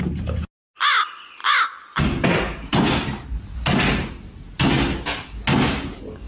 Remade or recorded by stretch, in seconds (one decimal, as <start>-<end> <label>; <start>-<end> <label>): 0.0-6.3 recorded